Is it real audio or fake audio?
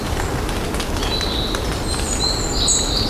real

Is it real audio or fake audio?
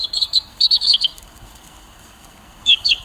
fake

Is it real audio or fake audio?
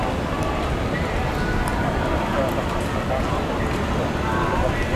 real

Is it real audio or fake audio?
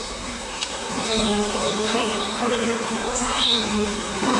fake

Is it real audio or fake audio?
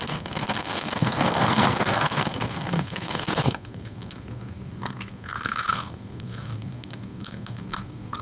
fake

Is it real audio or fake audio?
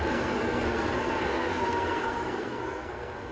fake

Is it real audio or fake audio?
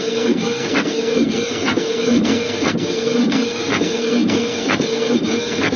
fake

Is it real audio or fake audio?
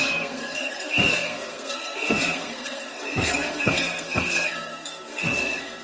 fake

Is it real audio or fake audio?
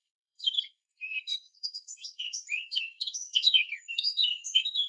fake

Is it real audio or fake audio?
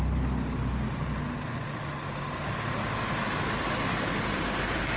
real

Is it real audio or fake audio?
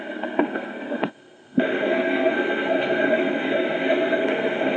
fake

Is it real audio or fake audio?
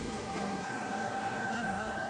fake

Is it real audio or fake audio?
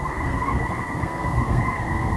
fake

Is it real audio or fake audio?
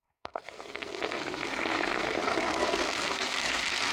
fake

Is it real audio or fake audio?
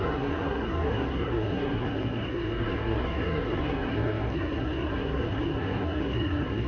fake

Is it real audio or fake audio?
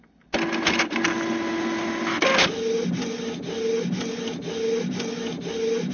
real